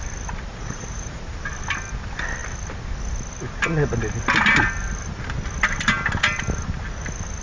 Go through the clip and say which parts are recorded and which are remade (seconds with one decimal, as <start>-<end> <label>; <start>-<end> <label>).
0.0-0.5 recorded; 0.5-1.2 remade; 1.2-7.4 recorded